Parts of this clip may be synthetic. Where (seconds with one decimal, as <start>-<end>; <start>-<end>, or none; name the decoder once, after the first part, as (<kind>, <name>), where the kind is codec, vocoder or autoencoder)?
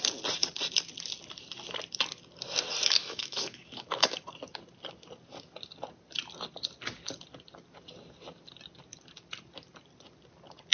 3.0-4.2 (autoencoder, DAC-VAE)